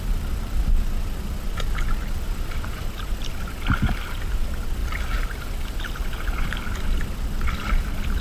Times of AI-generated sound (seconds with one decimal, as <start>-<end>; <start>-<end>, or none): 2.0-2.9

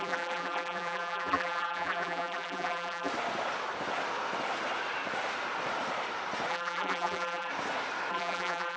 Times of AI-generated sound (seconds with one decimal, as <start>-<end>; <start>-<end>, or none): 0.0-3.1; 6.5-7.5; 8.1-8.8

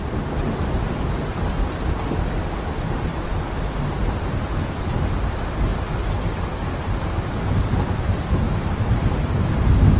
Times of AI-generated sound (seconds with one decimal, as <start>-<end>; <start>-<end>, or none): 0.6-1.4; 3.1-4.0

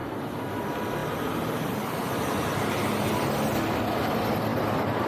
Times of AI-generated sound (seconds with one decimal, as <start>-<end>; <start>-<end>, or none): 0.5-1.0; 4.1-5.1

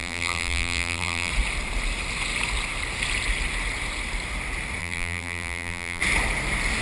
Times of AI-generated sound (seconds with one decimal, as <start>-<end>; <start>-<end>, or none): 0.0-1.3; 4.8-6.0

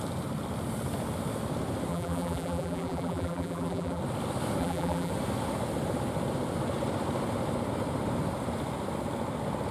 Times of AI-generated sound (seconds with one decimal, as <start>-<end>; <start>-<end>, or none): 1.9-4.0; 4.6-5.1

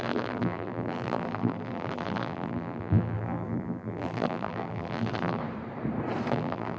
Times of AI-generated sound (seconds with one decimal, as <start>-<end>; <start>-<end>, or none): 0.0-5.4; 6.3-6.8

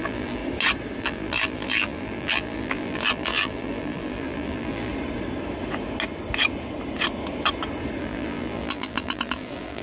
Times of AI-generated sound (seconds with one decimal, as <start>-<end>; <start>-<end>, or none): 0.0-0.4; 1.0-4.9; 8.0-9.8